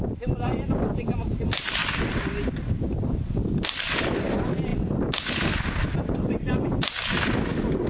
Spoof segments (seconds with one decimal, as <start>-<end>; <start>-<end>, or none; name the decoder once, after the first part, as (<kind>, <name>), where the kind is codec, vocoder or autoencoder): 0.0-1.8 (vocoder, BigVGAN v2); 2.5-4.7; 5.9-7.9